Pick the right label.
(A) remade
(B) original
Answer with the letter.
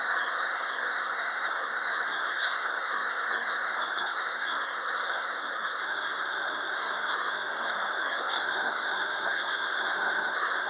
A